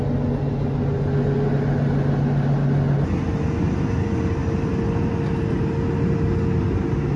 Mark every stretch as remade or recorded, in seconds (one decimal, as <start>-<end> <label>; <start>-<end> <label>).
0.0-7.2 recorded